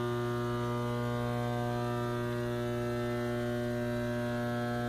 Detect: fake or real real